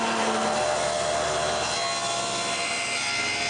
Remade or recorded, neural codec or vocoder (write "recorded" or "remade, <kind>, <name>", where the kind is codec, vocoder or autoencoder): recorded